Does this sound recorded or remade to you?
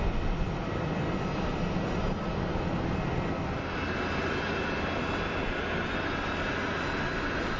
recorded